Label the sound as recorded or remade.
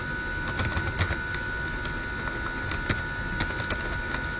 recorded